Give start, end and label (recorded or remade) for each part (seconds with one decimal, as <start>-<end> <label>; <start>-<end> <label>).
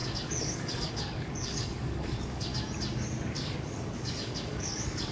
0.0-2.5 remade; 2.5-3.3 recorded; 3.3-5.1 remade